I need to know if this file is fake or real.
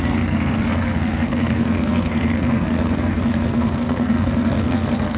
fake